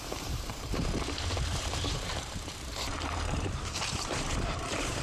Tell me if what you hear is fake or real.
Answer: fake